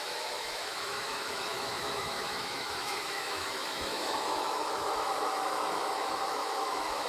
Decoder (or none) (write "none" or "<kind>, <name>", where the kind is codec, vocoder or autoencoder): autoencoder, DAC-VAE